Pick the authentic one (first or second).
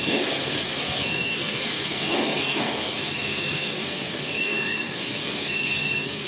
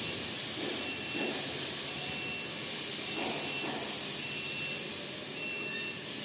second